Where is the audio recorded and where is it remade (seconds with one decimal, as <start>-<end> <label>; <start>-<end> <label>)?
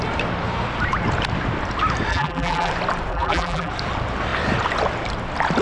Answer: 0.0-2.1 recorded; 2.1-2.7 remade; 2.7-3.1 recorded; 3.1-3.7 remade; 3.7-5.6 recorded